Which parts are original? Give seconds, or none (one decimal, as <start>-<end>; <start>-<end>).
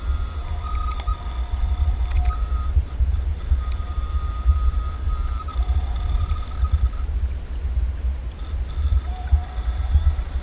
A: 0.0-5.5; 6.6-10.4